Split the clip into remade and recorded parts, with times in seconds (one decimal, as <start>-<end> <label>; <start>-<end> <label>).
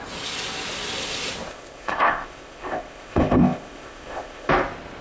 0.0-1.5 recorded; 1.5-4.5 remade; 4.5-5.0 recorded